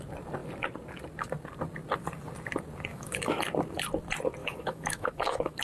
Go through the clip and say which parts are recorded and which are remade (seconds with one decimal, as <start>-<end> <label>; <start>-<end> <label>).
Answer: 0.0-2.9 recorded; 2.9-3.4 remade; 3.4-4.4 recorded; 4.4-5.6 remade